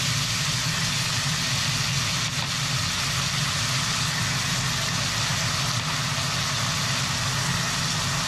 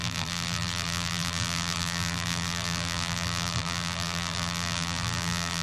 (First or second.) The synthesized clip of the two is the second